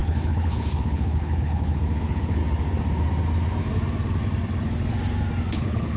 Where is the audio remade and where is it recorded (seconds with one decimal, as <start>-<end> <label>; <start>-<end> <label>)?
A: 0.0-2.4 remade; 2.4-5.5 recorded; 5.5-6.0 remade